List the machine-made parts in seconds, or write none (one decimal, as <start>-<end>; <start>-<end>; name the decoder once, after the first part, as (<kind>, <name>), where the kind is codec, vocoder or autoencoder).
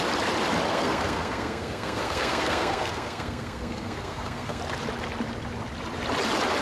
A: 0.7-4.6 (codec, SNAC)